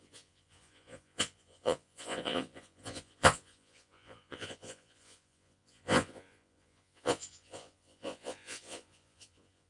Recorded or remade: remade